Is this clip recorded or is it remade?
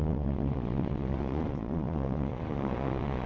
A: remade